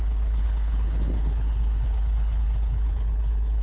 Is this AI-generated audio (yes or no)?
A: yes